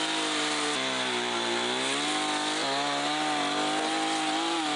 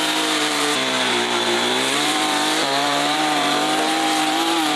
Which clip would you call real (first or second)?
first